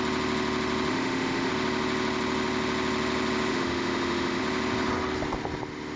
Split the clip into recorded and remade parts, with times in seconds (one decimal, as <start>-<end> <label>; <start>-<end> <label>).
0.0-0.9 recorded; 0.9-1.5 remade; 1.5-3.5 recorded; 3.5-4.4 remade; 4.4-6.0 recorded